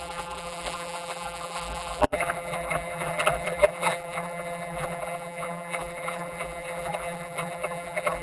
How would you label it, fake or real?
fake